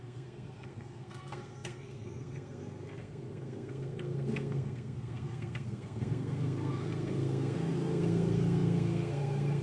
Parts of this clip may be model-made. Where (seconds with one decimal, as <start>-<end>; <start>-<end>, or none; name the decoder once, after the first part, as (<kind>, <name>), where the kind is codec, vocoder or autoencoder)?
0.0-9.6 (codec, SNAC)